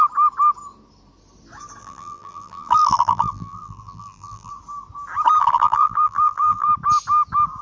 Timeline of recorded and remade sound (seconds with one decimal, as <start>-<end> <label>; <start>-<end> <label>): 0.0-1.8 recorded; 1.8-4.5 remade; 4.5-5.4 recorded; 5.4-6.7 remade; 6.7-7.6 recorded